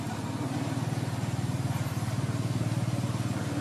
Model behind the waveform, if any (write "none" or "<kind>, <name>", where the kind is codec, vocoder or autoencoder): none